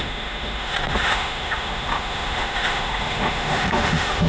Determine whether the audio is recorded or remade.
remade